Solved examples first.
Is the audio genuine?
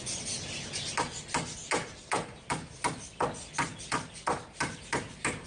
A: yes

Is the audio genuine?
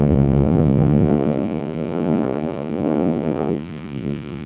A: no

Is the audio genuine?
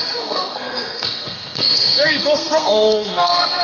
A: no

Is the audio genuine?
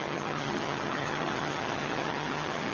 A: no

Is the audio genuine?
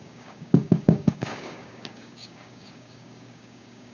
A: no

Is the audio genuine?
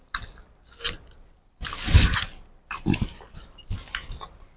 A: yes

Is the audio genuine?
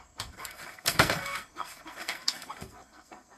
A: no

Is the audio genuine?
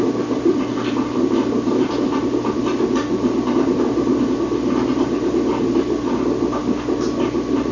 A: yes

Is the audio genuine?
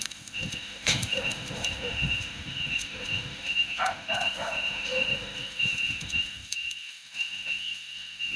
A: no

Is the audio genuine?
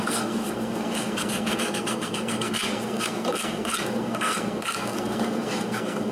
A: no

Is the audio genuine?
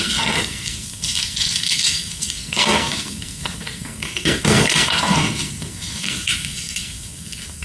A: no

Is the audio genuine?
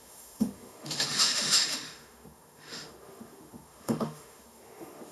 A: no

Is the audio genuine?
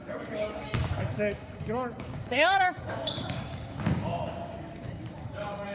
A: no